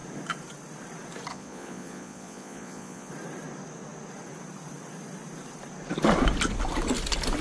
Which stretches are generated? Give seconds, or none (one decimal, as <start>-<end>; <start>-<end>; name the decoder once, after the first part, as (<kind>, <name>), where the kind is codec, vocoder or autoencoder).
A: 1.3-3.1 (vocoder, Vocos)